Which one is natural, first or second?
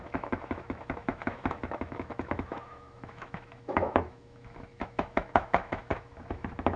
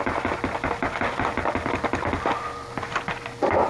second